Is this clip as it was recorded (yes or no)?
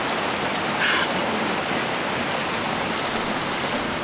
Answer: yes